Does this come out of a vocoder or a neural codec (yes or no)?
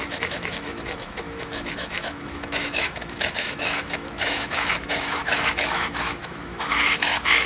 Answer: yes